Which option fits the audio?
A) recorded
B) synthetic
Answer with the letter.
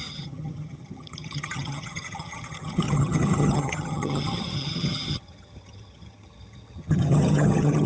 B